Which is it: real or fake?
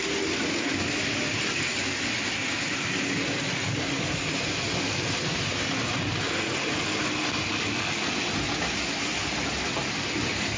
real